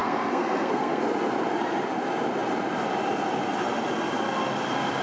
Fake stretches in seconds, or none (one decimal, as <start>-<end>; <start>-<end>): 0.0-1.0